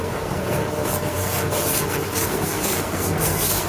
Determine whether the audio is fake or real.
fake